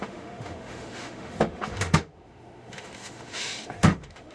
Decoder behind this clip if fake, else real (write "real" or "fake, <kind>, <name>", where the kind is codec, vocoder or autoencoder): fake, autoencoder, DAC-VAE